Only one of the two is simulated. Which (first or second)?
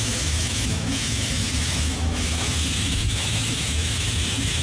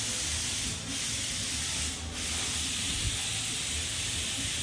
first